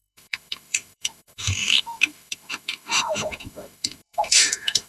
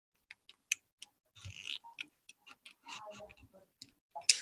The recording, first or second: second